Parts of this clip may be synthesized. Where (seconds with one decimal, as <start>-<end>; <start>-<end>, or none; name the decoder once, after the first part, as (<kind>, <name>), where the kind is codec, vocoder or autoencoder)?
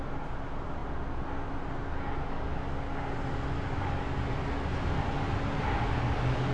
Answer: none